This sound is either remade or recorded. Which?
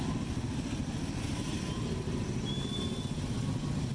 recorded